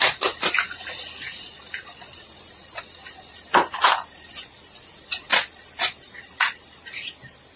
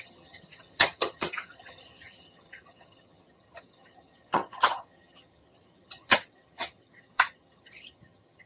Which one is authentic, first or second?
first